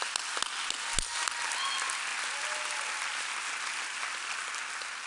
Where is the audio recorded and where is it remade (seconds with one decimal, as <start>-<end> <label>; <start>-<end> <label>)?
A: 0.0-5.1 recorded